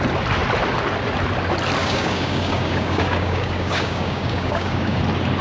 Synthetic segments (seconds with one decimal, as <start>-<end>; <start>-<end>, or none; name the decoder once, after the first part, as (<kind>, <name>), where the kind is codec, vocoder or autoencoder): 1.8-5.0 (codec, DAC)